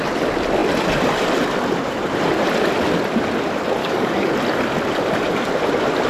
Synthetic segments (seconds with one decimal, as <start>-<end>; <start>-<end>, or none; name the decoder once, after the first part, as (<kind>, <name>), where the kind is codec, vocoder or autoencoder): 3.8-4.3 (codec, DAC)